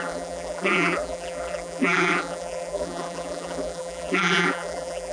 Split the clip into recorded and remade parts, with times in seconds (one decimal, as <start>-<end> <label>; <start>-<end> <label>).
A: 0.0-5.1 remade